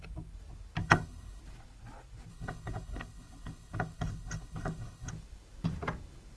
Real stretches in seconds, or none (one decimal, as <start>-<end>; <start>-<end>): 0.0-0.8; 1.4-2.3; 5.1-6.4